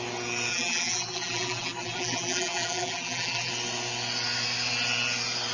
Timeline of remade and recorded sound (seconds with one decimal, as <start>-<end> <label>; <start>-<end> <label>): 0.0-0.5 recorded; 0.5-3.5 remade; 3.5-5.5 recorded